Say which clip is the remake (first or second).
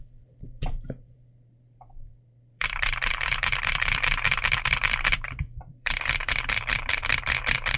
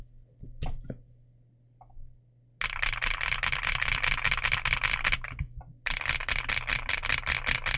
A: first